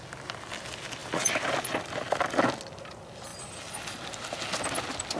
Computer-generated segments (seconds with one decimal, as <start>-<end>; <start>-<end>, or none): 3.3-3.8